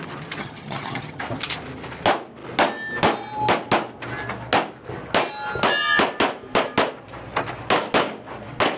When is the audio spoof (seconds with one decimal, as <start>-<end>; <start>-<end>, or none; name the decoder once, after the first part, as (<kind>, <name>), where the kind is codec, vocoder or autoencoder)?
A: 0.4-1.2 (vocoder, HiFi-GAN)